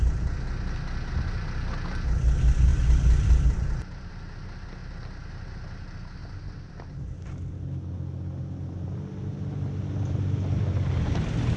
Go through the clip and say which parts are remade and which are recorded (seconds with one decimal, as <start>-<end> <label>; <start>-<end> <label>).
0.0-2.7 recorded; 2.7-4.1 remade; 4.1-4.8 recorded; 4.8-5.3 remade; 5.3-6.2 recorded; 6.2-7.0 remade; 7.0-11.6 recorded